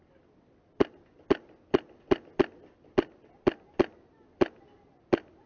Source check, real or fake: real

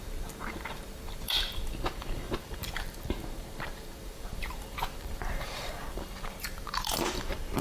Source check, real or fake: fake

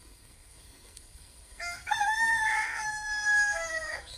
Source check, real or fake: fake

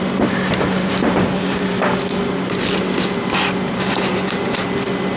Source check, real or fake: real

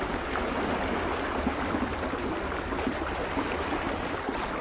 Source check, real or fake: real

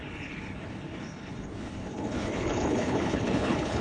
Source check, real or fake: fake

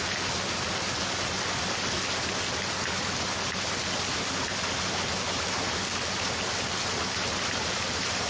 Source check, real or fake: real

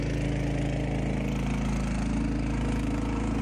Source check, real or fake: real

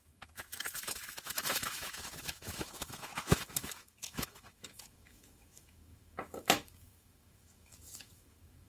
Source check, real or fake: fake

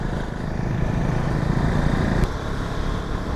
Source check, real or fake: fake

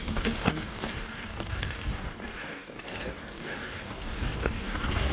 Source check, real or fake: fake